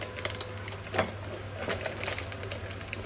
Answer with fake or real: real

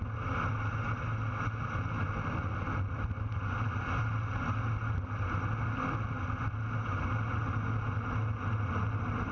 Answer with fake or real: real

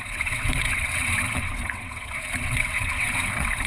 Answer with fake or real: fake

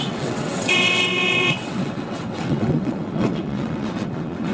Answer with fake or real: fake